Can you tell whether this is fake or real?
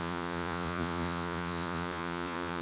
fake